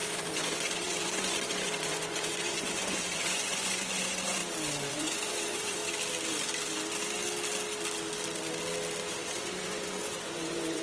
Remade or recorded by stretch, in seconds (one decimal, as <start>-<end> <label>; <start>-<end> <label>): 0.0-4.4 remade; 4.4-4.9 recorded; 4.9-5.8 remade; 5.8-9.1 recorded; 9.1-10.8 remade